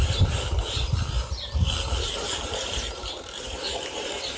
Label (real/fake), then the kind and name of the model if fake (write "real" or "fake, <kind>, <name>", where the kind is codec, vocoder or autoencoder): fake, vocoder, BigVGAN v2